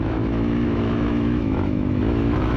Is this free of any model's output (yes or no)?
no